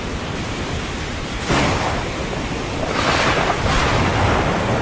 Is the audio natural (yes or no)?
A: yes